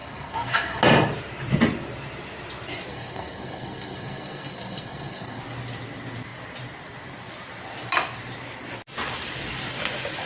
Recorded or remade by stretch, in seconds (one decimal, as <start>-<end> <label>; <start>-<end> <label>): 0.0-0.8 remade; 0.8-2.9 recorded; 2.9-5.4 remade; 5.4-10.3 recorded